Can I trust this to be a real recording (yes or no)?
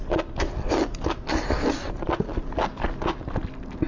yes